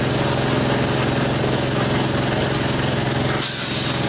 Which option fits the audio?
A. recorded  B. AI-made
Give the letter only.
A